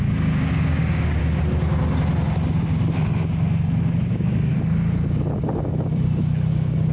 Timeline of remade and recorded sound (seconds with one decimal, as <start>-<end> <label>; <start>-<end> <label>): 0.0-1.2 remade; 1.2-4.1 recorded; 4.1-4.5 remade; 4.5-6.5 recorded; 6.5-6.9 remade